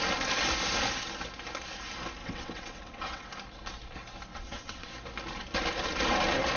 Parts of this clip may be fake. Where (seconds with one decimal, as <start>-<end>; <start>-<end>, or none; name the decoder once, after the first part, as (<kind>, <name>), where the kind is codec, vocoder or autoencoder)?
2.2-3.3 (vocoder, WaveNeXt); 4.3-4.9